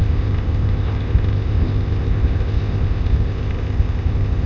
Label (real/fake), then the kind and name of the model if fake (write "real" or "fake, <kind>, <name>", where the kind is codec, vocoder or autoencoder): fake, codec, ZipCodec